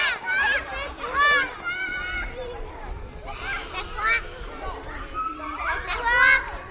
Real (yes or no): yes